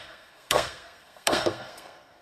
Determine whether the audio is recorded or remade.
remade